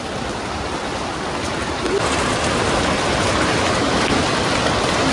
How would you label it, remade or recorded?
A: recorded